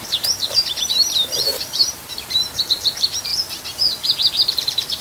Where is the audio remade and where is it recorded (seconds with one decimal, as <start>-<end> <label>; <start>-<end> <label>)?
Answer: 0.0-3.3 remade; 3.3-4.3 recorded; 4.3-5.0 remade